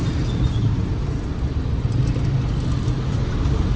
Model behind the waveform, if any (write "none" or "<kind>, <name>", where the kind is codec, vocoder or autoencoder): none